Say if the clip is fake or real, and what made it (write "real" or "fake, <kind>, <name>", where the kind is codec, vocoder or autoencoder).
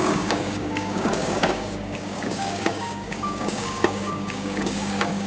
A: fake, codec, DAC